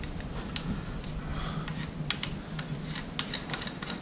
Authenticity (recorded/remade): recorded